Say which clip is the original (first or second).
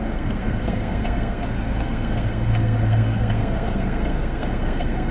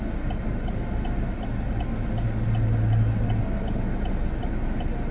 second